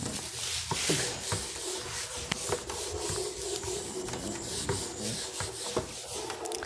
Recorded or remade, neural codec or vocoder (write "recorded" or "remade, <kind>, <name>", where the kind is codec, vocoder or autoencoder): recorded